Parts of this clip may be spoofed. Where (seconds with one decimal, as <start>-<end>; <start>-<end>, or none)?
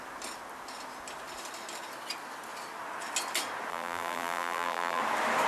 3.7-5.0